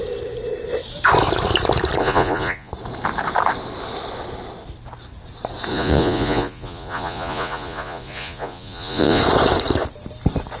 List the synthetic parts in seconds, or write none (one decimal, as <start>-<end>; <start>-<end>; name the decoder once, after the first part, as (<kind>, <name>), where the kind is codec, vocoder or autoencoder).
2.0-2.7 (vocoder, Vocos); 5.7-9.2